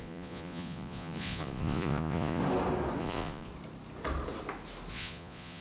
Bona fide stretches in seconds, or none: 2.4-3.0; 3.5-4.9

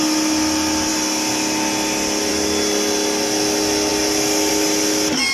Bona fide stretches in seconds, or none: 0.0-5.3

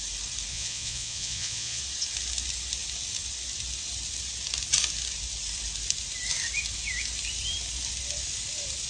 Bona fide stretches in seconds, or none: 0.0-0.5; 1.8-8.9

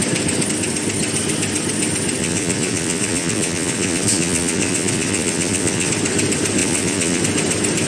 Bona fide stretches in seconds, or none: 0.0-2.2; 5.9-6.6; 7.2-7.9

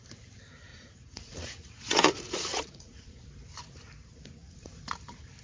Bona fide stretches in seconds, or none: 0.0-0.7; 3.2-5.4

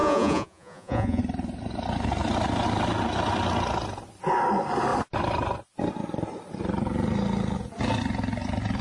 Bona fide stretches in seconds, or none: 1.2-8.8

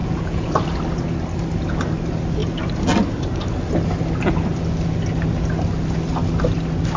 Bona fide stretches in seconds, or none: 0.5-7.0